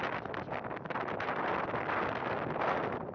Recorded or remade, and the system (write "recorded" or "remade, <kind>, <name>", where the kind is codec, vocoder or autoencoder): recorded